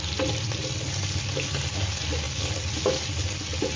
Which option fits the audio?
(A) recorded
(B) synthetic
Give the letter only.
A